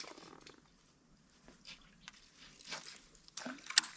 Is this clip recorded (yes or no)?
yes